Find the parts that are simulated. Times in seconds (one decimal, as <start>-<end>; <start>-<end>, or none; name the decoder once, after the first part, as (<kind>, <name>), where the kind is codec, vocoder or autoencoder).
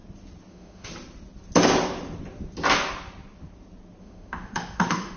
0.5-0.9 (autoencoder, DAC-VAE); 4.0-5.2